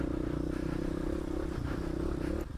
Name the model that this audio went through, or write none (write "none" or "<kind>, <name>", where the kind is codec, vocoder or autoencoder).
none